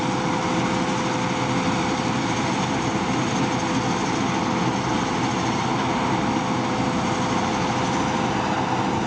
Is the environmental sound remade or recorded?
recorded